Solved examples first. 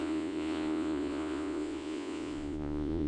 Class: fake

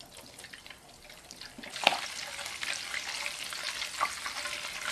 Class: real